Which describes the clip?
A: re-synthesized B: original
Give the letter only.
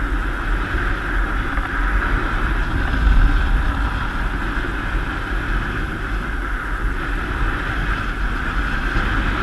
B